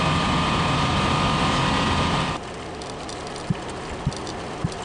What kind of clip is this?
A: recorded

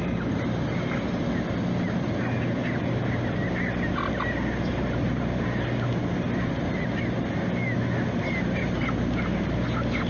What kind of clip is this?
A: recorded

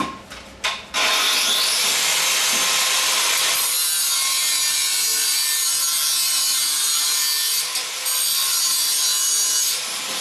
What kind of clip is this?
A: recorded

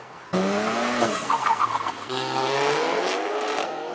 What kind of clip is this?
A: remade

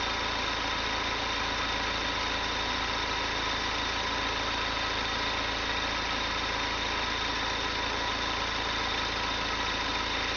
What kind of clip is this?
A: recorded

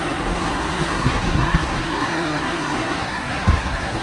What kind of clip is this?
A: remade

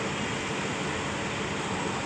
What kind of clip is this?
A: recorded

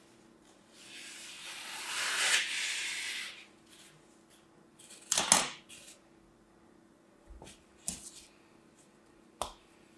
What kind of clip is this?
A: recorded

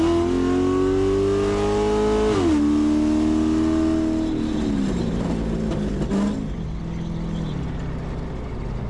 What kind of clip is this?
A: recorded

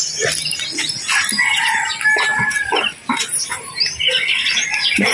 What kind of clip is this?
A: recorded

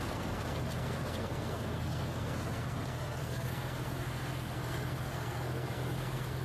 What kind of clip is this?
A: remade